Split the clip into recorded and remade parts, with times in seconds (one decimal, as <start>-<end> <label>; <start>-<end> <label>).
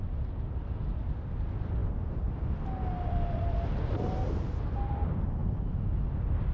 0.0-6.5 recorded